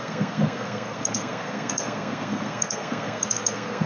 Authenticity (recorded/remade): remade